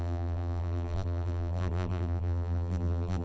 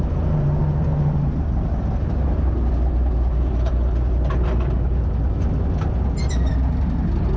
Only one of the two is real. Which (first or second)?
second